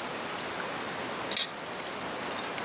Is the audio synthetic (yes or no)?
no